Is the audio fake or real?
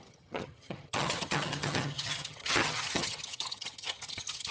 fake